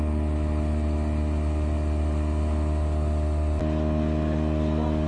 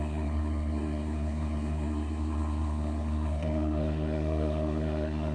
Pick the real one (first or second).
first